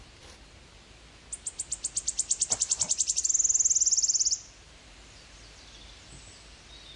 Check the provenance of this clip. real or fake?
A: real